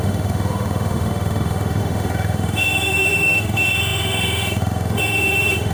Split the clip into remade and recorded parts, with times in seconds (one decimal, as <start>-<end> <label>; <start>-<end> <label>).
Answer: 0.0-5.7 remade